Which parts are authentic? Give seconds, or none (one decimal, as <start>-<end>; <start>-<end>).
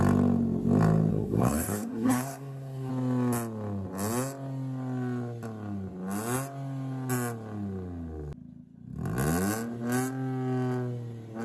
0.0-1.1; 2.9-11.4